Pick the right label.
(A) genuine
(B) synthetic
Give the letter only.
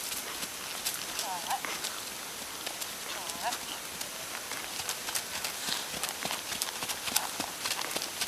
A